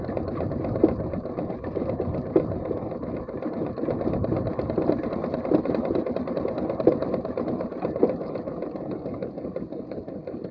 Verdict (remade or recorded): remade